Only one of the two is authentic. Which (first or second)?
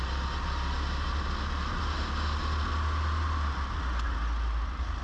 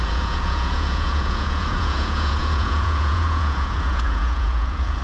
first